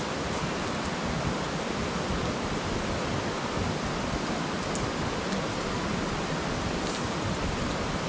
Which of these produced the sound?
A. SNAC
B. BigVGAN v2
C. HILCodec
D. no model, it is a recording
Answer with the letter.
D